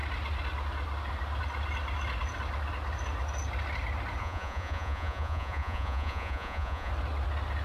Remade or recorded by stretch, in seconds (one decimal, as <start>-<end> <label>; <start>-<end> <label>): 0.0-4.2 recorded; 4.2-6.9 remade; 6.9-7.6 recorded